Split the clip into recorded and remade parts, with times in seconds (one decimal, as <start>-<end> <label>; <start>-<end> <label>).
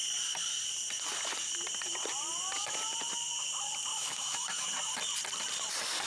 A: 0.0-3.9 recorded; 3.9-4.7 remade; 4.7-6.1 recorded